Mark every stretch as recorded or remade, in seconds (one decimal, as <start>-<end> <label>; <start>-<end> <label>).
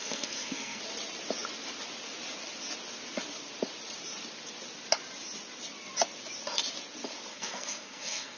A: 0.0-0.8 remade; 0.8-7.3 recorded; 7.3-8.4 remade